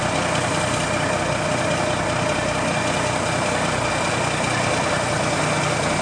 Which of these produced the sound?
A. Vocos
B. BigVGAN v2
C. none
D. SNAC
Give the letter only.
C